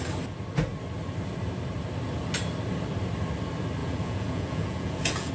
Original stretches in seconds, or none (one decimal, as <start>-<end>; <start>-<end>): 0.0-3.8